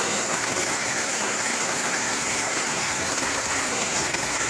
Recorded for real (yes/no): no